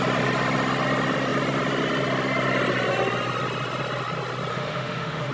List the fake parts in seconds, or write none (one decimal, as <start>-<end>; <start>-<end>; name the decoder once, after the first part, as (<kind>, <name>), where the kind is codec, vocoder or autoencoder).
4.5-5.3 (autoencoder, DAC-VAE)